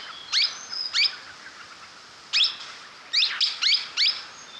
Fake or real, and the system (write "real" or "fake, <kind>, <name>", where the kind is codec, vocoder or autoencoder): real